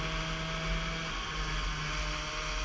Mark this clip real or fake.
real